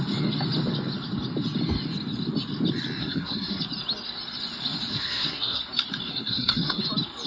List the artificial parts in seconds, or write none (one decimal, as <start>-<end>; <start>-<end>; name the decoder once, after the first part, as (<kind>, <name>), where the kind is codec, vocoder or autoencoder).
3.0-3.6 (codec, SNAC); 4.9-5.6; 6.1-6.8